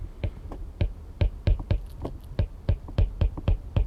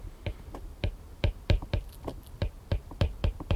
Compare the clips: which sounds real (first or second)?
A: first